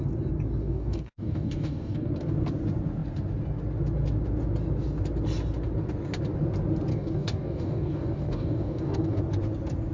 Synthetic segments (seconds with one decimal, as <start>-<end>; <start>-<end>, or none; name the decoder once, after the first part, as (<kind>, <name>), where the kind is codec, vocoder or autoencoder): 0.6-2.1 (codec, DAC); 6.9-9.2

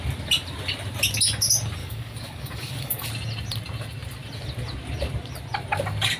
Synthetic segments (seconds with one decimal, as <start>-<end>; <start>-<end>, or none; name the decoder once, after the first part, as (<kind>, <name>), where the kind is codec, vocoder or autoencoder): 1.8-3.1 (codec, DAC)

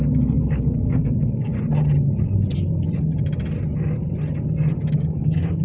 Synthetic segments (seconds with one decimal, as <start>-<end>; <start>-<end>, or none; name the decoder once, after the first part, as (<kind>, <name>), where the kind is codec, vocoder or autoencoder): 0.0-1.5 (codec, DAC); 4.9-5.6

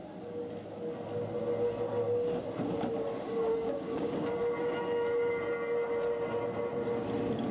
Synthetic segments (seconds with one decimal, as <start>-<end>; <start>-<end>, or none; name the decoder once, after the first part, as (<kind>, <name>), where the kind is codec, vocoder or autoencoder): 3.5-4.3 (codec, DAC)

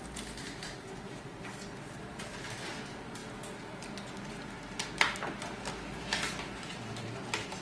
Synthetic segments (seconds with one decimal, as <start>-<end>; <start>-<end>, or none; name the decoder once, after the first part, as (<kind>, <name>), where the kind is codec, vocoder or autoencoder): none